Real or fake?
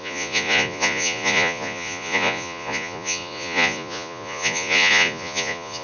fake